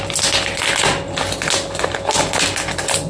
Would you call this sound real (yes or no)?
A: yes